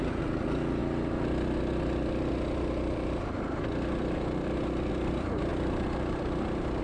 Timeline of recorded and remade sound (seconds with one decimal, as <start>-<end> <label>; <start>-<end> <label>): 0.0-6.8 recorded